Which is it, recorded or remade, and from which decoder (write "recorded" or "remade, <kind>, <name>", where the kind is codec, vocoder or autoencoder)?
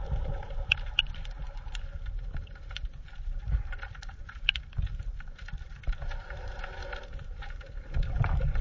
remade, vocoder, BigVGAN v2